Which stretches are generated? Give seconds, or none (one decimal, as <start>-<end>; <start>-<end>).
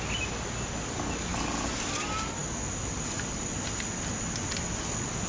none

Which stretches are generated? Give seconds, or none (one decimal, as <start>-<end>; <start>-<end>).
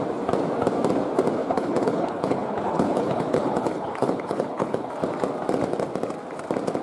1.4-4.9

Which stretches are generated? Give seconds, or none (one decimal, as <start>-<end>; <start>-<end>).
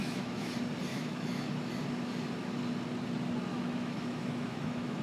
0.0-0.5; 0.9-1.7; 3.5-5.0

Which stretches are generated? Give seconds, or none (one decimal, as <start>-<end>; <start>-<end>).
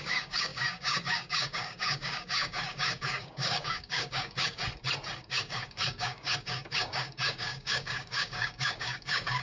0.0-4.6; 5.2-9.4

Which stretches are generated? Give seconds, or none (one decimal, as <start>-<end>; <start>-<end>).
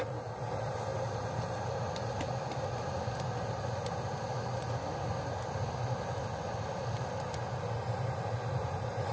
none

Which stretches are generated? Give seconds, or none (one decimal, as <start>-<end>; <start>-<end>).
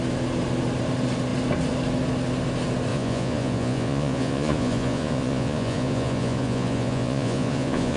2.9-8.0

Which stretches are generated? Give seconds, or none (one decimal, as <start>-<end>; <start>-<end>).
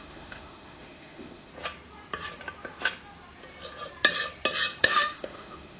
0.0-1.5; 4.8-5.8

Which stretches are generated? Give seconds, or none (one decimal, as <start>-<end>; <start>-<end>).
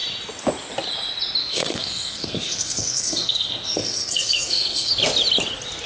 1.4-4.9